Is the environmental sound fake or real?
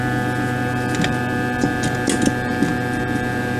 real